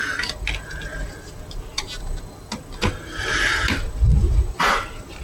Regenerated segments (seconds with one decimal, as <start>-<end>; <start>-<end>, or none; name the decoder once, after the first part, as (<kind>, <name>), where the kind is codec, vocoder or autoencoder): 1.7-2.2 (vocoder, BigVGAN v2); 4.1-4.8